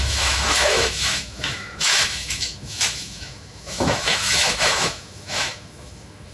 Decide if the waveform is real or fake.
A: fake